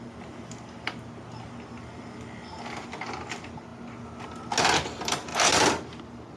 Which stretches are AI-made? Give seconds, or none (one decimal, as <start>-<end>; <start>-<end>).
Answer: none